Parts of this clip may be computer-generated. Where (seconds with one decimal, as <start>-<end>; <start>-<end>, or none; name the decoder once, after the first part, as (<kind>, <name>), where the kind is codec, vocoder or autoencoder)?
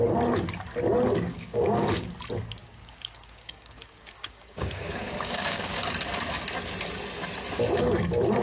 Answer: 1.3-2.1 (codec, DAC); 2.6-5.8